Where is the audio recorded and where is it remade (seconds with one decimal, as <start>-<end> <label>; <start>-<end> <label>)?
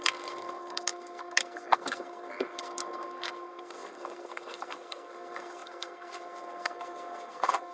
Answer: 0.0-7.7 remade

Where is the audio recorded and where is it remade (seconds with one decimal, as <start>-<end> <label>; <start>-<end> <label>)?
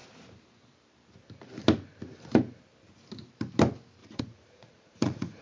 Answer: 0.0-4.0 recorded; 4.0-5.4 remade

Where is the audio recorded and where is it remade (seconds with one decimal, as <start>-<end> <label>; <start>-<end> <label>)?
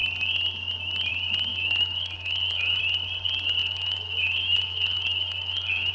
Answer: 0.0-1.5 recorded; 1.5-2.8 remade; 2.8-3.6 recorded; 3.6-5.9 remade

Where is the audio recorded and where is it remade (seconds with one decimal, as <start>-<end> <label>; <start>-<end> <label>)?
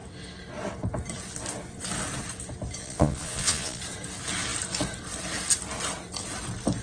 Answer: 0.0-2.8 recorded; 2.8-3.8 remade; 3.8-6.8 recorded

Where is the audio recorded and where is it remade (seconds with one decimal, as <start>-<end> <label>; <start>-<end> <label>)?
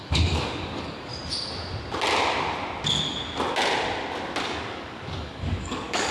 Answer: 0.0-1.1 remade; 1.1-4.4 recorded; 4.4-6.1 remade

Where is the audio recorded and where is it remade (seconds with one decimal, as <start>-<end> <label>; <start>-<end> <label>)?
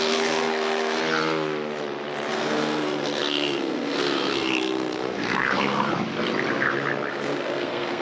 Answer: 0.0-1.0 remade; 1.0-2.3 recorded; 2.3-5.9 remade; 5.9-7.1 recorded; 7.1-8.0 remade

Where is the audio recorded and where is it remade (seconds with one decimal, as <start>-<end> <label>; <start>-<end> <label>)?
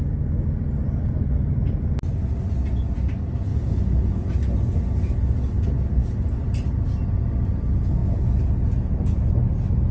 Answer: 0.0-3.5 recorded; 3.5-4.3 remade; 4.3-8.0 recorded; 8.0-9.3 remade; 9.3-9.9 recorded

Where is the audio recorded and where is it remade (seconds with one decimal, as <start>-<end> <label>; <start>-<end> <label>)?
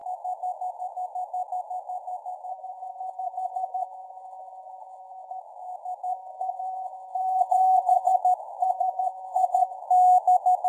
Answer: 0.0-2.5 recorded; 2.5-5.4 remade; 5.4-6.1 recorded; 6.1-8.2 remade; 8.2-8.6 recorded; 8.6-9.8 remade; 9.8-10.7 recorded